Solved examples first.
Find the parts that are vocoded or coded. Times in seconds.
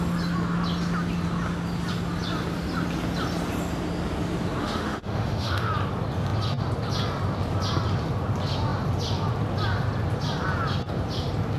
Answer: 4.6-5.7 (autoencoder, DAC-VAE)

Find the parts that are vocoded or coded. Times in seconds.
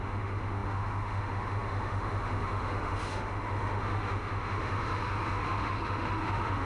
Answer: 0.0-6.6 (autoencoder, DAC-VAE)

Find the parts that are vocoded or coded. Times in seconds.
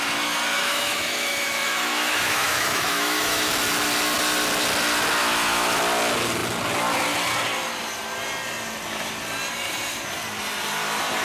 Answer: 0.5-3.5 (autoencoder, DAC-VAE); 5.2-5.8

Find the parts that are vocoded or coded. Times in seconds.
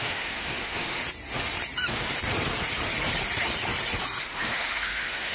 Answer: 0.0-1.0 (autoencoder, DAC-VAE); 4.2-5.3